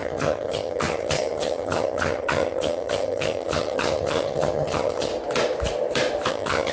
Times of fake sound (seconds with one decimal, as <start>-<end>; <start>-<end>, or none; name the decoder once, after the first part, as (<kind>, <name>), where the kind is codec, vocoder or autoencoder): 0.0-5.1 (vocoder, HiFi-GAN); 6.3-6.7